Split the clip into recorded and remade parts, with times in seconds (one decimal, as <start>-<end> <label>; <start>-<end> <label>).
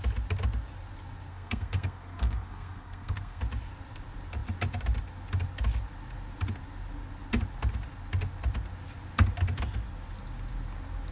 0.0-1.3 recorded; 1.3-3.4 remade; 3.4-11.1 recorded